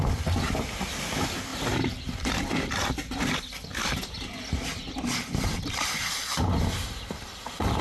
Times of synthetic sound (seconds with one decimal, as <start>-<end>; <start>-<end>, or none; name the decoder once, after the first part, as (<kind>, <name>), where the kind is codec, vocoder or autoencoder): 0.0-1.5 (vocoder, BigVGAN v2); 2.2-3.7; 4.9-7.8